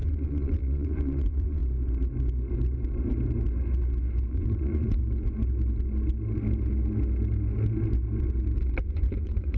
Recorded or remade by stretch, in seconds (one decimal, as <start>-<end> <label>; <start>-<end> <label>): 0.0-1.6 remade; 1.6-4.3 recorded; 4.3-5.0 remade; 5.0-8.8 recorded; 8.8-9.6 remade